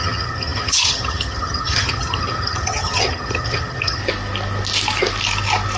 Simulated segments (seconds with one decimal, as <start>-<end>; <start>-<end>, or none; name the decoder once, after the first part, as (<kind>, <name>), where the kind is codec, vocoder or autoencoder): 0.0-4.0 (vocoder, HiFi-GAN)